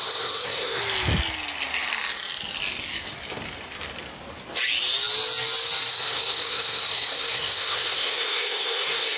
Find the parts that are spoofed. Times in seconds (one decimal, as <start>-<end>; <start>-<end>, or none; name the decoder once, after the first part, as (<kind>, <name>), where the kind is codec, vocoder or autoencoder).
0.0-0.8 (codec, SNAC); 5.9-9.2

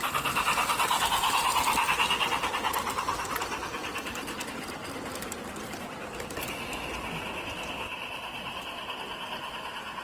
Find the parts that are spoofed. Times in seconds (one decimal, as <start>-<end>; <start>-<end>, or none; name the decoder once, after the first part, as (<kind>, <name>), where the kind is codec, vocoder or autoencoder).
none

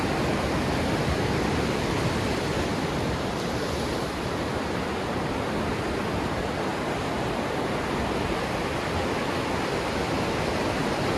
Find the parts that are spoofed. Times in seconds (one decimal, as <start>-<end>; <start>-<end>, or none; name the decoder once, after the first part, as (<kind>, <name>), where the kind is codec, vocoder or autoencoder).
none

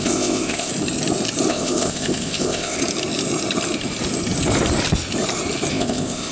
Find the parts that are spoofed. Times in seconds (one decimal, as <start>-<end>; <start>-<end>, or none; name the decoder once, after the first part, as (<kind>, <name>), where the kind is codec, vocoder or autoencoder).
0.0-0.7 (codec, ZipCodec); 1.5-2.8; 5.7-6.3